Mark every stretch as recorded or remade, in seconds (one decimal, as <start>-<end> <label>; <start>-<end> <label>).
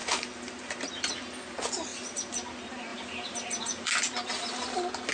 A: 0.0-1.1 remade; 1.1-1.9 recorded; 1.9-2.5 remade; 2.5-2.9 recorded; 2.9-3.9 remade; 3.9-5.1 recorded